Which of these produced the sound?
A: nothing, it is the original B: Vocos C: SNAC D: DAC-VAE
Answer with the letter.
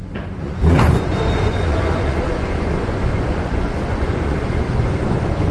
B